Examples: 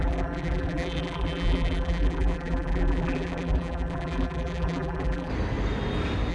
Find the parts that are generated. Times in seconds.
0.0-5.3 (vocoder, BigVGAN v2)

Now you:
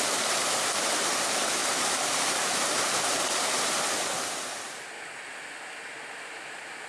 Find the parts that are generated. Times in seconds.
1.6-3.3 (vocoder, BigVGAN v2)

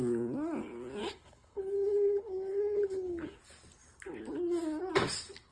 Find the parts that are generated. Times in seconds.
1.0-3.4 (codec, HILCodec)

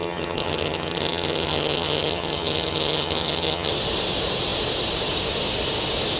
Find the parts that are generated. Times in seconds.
0.0-3.7 (vocoder, HiFi-GAN)

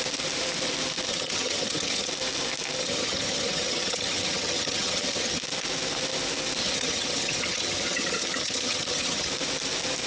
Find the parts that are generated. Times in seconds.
1.1-2.1 (vocoder, HiFi-GAN); 2.8-5.4; 6.6-9.3

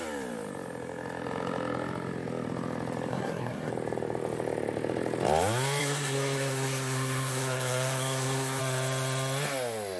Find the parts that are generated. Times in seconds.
3.1-3.7 (codec, SNAC); 5.8-8.6

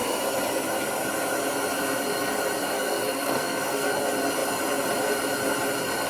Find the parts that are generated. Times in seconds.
2.7-4.0 (codec, SNAC)

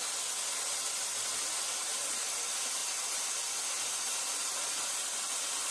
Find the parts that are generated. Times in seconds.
none